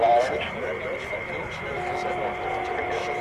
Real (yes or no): yes